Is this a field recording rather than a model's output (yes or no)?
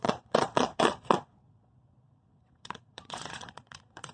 no